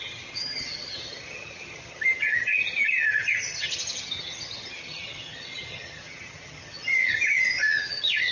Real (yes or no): no